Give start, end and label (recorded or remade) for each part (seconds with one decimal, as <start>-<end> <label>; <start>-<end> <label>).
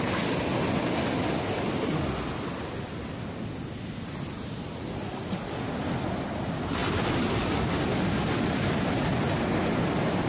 0.0-10.3 recorded